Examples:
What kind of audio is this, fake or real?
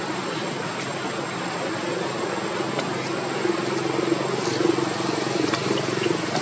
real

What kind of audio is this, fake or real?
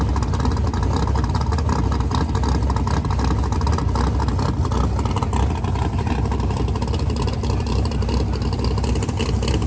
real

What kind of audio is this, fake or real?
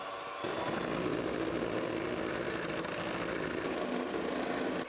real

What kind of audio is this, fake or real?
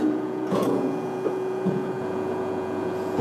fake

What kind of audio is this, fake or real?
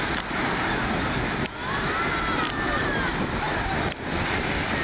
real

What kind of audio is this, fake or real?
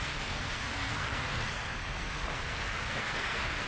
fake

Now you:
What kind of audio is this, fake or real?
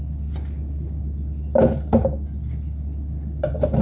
real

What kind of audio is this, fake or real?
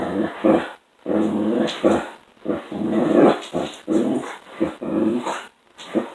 real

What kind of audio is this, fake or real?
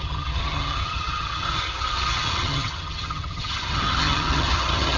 fake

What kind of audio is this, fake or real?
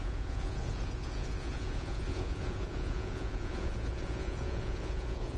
fake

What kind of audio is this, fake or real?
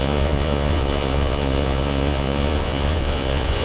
fake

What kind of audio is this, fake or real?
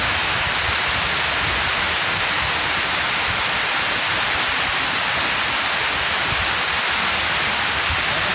real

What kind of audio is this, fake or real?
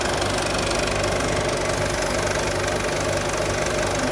real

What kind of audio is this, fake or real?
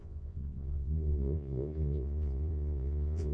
fake